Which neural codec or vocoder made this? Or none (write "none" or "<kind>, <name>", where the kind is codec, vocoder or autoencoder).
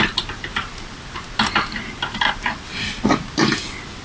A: none